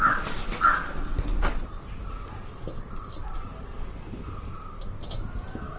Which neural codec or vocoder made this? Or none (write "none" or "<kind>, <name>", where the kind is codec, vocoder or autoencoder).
none